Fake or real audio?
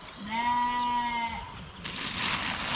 real